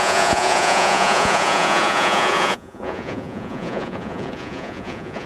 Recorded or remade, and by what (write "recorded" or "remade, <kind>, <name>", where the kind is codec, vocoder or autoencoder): remade, vocoder, Vocos